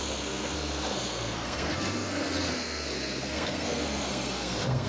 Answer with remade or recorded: remade